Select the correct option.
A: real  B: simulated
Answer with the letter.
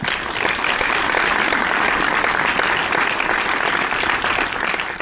A